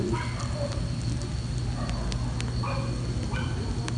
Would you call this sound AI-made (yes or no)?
no